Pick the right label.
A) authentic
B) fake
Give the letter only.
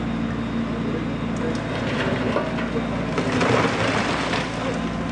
A